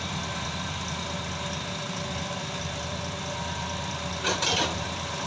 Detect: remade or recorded remade